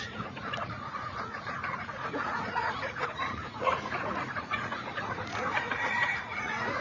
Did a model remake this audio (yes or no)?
yes